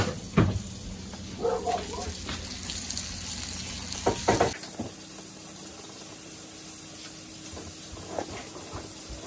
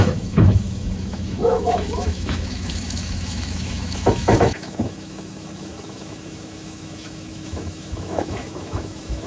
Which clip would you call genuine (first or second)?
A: first